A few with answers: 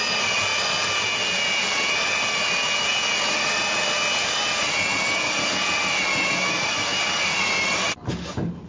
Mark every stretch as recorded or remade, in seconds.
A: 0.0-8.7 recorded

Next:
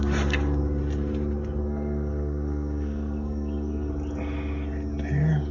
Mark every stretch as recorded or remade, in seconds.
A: 0.0-1.6 recorded; 1.6-3.9 remade; 3.9-5.5 recorded

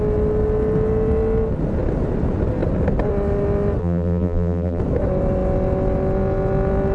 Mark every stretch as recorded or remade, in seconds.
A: 0.0-3.8 recorded; 3.8-4.8 remade; 4.8-6.9 recorded

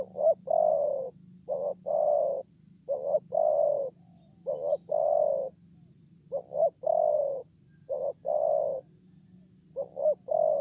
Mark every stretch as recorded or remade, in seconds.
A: 0.0-10.6 recorded

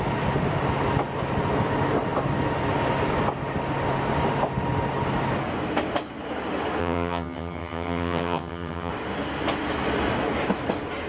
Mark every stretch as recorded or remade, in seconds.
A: 0.0-6.8 recorded; 6.8-8.9 remade; 8.9-11.1 recorded

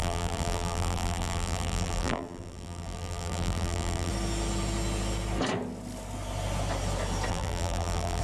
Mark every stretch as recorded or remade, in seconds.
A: 0.0-4.1 remade; 4.1-7.3 recorded; 7.3-8.2 remade

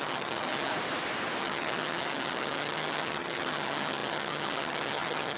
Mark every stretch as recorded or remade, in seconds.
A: 0.0-0.7 remade; 0.7-1.4 recorded; 1.4-5.4 remade